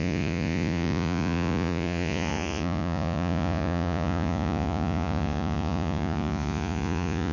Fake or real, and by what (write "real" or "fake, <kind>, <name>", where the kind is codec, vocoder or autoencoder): fake, vocoder, Vocos